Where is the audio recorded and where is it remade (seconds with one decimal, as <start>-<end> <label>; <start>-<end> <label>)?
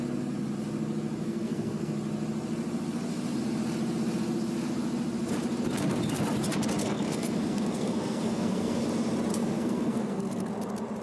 0.0-1.2 recorded; 1.2-1.9 remade; 1.9-6.8 recorded; 6.8-8.8 remade; 8.8-9.3 recorded; 9.3-10.5 remade; 10.5-11.0 recorded